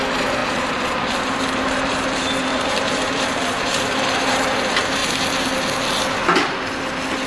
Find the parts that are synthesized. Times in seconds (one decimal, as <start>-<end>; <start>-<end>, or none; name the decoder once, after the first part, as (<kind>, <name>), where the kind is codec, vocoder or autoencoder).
0.0-5.0 (vocoder, BigVGAN v2)

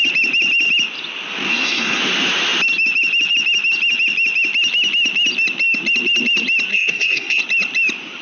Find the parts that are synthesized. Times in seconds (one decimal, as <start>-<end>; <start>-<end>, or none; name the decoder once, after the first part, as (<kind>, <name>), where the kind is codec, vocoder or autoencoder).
1.5-2.0 (codec, SNAC); 6.7-7.4